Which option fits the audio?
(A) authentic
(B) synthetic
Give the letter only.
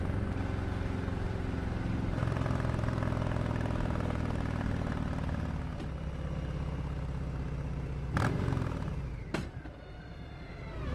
A